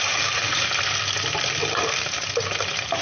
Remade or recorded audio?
recorded